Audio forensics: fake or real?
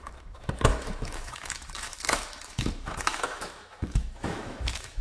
fake